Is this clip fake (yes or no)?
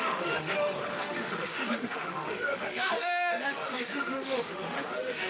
yes